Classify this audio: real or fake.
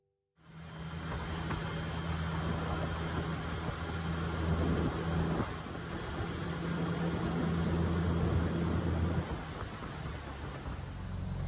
real